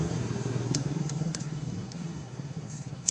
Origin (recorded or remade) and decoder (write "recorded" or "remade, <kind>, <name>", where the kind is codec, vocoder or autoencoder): remade, codec, SNAC